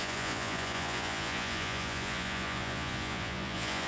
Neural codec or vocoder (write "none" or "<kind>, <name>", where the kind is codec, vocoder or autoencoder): vocoder, Vocos